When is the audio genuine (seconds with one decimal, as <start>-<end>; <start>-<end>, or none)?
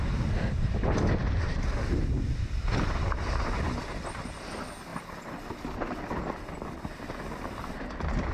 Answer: 0.0-8.3